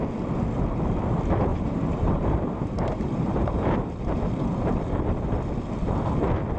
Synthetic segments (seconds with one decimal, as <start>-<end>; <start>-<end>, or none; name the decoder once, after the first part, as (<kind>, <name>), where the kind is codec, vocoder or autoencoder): 1.5-3.8 (vocoder, BigVGAN v2)